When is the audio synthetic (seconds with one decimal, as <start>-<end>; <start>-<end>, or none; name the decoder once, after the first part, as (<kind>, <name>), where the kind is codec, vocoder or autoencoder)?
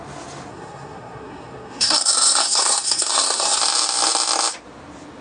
0.5-3.6 (codec, SNAC)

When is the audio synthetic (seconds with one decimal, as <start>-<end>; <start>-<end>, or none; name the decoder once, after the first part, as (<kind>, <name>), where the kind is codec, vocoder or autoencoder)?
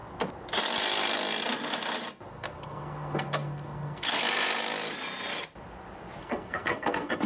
2.3-4.2 (codec, SNAC); 6.2-7.3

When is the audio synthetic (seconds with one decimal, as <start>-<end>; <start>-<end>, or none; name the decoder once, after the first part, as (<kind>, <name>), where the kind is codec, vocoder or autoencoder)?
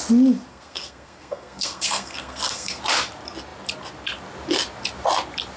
0.5-2.8 (codec, SNAC)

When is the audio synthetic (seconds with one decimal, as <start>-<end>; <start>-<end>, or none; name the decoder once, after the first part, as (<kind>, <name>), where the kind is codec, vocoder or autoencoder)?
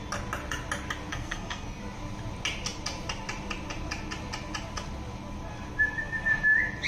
1.1-1.8 (codec, SNAC)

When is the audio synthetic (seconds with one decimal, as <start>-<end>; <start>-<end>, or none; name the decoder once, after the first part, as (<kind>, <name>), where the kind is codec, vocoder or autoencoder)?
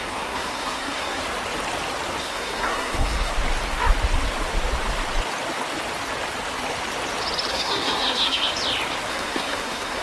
0.0-1.2 (codec, SNAC); 2.2-3.3; 7.5-8.5; 9.1-10.0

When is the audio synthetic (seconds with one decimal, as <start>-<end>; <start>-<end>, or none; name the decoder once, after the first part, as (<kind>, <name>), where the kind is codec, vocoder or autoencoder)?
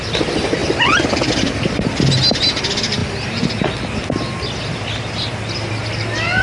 none